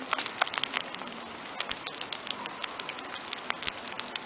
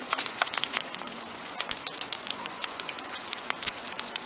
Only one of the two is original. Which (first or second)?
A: first